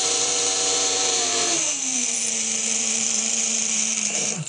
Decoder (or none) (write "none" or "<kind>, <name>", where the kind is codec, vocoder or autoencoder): vocoder, BigVGAN v2